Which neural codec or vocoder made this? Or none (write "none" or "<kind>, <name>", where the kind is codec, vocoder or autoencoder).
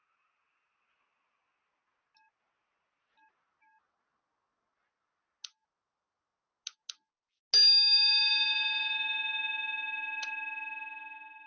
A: none